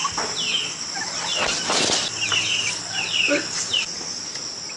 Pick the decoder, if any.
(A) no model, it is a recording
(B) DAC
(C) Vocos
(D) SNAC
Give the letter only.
A